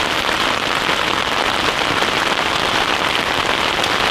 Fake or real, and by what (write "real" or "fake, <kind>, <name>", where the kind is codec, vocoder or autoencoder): real